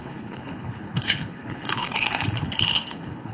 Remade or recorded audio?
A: remade